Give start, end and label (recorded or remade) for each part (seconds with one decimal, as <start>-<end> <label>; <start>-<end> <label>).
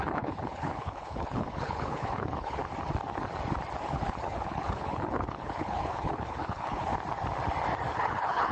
0.0-2.6 remade; 2.6-3.8 recorded; 3.8-6.9 remade; 6.9-7.9 recorded; 7.9-8.5 remade